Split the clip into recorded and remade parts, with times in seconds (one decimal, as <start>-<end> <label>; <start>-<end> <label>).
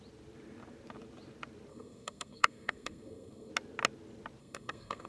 0.0-1.7 recorded; 1.7-3.5 remade; 3.5-4.4 recorded; 4.4-5.1 remade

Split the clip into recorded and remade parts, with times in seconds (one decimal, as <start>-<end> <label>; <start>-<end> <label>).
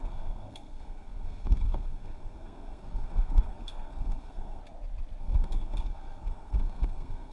0.0-4.6 remade; 4.6-5.2 recorded; 5.2-7.3 remade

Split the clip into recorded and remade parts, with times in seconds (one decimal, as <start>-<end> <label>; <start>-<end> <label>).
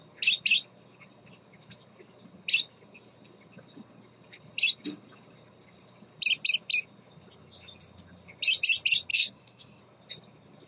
0.0-9.1 recorded; 9.1-9.8 remade; 9.8-10.7 recorded